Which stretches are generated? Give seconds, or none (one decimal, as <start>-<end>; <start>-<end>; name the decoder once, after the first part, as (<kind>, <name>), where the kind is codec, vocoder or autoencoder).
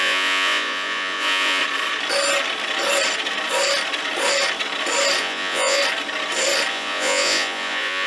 0.0-1.6 (vocoder, Vocos); 5.2-5.8; 6.7-8.1